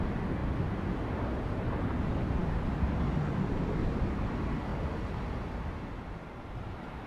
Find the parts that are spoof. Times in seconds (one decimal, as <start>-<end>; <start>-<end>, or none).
none